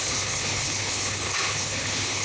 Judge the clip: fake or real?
fake